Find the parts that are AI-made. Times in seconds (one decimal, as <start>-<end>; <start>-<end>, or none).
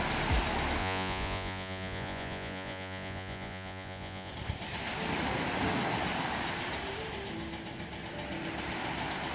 0.8-4.3